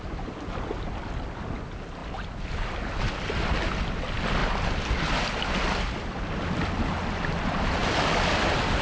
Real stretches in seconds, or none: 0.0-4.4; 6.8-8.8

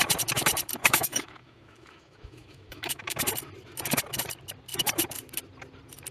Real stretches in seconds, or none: 0.0-0.8; 3.2-6.1

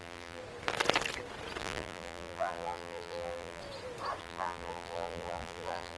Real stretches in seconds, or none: 0.4-1.6; 3.6-4.2

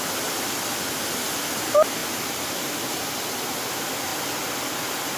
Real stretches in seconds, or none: 0.0-5.2

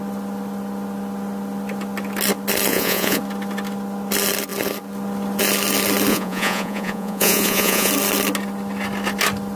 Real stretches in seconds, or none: 0.0-2.7; 3.2-6.1; 7.9-9.6